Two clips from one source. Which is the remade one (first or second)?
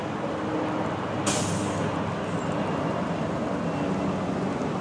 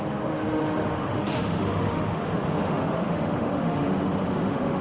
second